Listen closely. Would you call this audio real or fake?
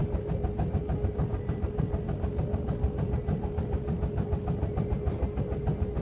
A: real